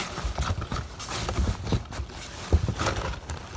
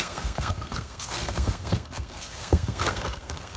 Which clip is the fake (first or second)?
second